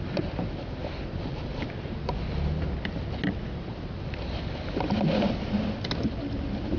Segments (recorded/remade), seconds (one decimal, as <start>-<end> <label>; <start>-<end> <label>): 0.0-6.8 recorded